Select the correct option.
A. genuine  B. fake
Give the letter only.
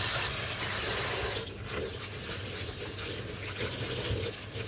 A